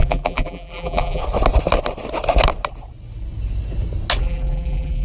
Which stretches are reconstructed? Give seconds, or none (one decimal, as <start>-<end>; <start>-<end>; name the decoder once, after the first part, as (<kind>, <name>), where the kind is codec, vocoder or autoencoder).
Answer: 0.0-1.2 (vocoder, BigVGAN v2); 4.2-5.0